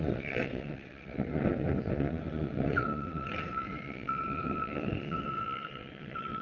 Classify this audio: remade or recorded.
remade